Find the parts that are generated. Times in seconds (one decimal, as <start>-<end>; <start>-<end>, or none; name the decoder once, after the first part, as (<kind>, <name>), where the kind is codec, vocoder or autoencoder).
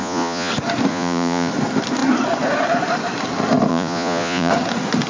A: 0.0-0.5 (vocoder, Vocos); 0.9-1.5; 3.7-4.5